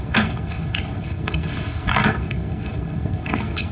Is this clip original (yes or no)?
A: no